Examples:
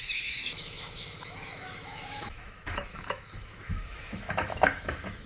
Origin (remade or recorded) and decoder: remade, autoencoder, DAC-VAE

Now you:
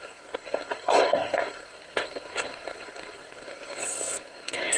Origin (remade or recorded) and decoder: remade, codec, SNAC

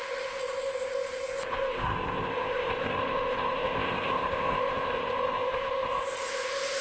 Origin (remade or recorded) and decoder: remade, codec, ZipCodec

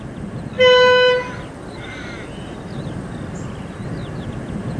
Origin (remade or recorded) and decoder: recorded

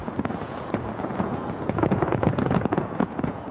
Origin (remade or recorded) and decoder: remade, vocoder, Vocos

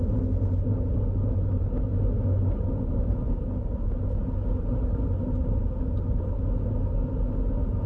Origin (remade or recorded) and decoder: recorded